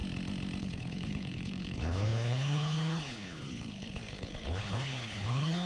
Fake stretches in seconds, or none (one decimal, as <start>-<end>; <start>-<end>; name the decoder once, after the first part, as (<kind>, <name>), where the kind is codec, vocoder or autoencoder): 0.6-5.7 (codec, HILCodec)